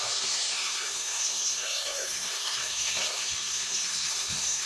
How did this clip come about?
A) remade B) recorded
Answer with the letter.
A